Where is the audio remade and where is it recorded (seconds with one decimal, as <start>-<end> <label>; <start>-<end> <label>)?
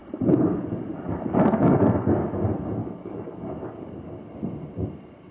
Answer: 0.0-2.4 remade; 2.4-2.8 recorded; 2.8-4.2 remade; 4.2-5.3 recorded